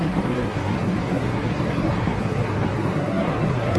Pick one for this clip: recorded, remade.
remade